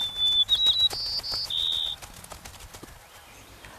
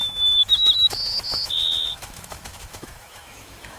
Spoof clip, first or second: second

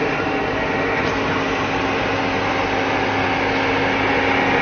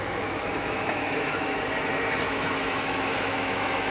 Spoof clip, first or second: second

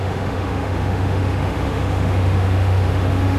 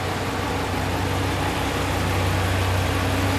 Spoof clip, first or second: first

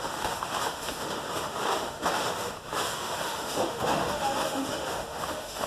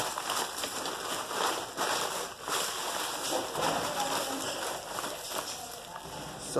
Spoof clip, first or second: first